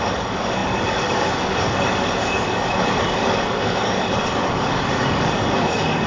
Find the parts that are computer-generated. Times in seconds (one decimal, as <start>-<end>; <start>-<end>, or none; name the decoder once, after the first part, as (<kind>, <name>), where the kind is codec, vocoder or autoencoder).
0.0-6.1 (codec, DAC)